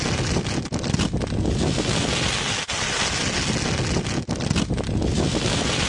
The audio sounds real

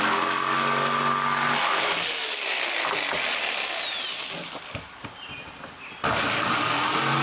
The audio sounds real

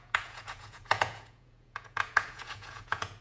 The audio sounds fake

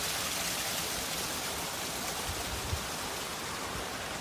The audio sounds real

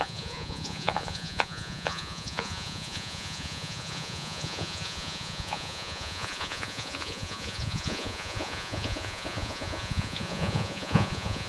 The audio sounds fake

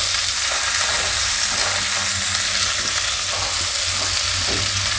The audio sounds real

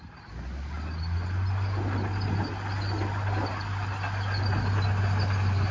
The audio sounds real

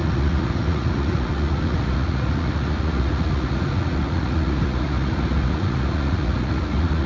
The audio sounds fake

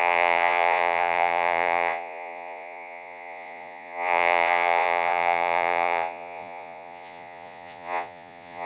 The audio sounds fake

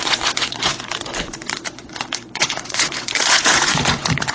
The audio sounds fake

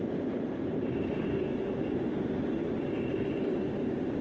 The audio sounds real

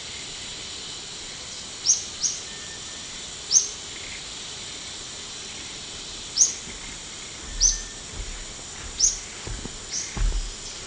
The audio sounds real